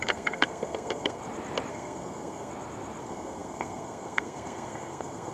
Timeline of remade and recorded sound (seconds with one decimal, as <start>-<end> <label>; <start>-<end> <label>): 0.0-1.2 remade; 1.2-1.7 recorded; 1.7-2.5 remade; 2.5-3.0 recorded; 3.0-5.3 remade